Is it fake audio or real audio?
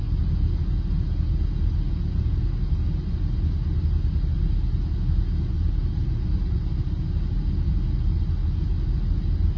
real